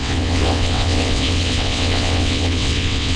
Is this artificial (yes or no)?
yes